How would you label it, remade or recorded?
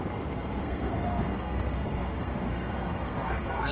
remade